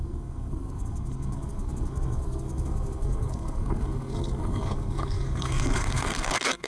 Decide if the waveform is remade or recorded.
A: remade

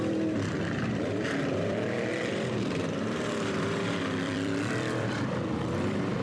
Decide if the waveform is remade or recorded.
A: remade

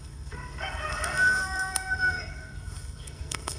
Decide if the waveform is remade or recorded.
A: remade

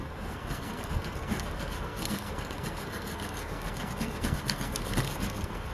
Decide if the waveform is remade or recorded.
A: remade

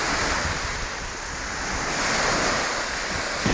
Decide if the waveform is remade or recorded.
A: recorded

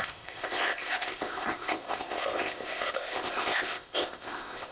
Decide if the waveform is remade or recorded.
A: remade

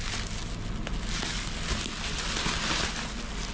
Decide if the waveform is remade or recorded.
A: recorded